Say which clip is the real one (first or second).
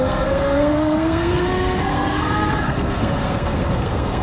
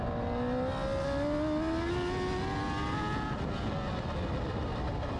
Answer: second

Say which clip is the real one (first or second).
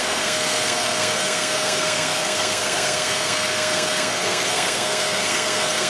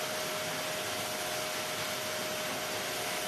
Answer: second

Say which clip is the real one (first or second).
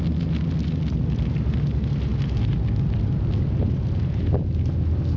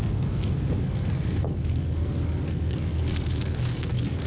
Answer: first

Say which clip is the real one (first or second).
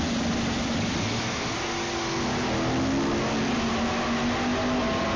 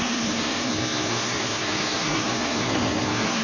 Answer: first